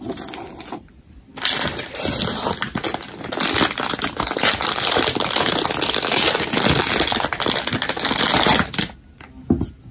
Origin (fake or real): real